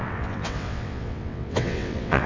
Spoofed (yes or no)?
yes